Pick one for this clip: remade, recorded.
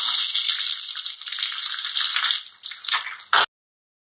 recorded